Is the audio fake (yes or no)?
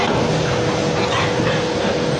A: no